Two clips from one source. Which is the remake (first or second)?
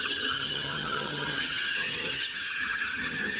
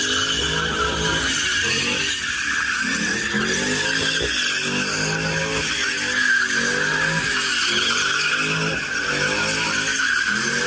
first